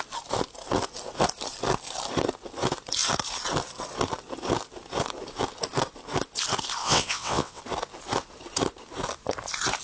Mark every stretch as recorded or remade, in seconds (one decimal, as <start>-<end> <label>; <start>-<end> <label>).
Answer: 0.0-6.8 recorded; 6.8-7.6 remade; 7.6-9.8 recorded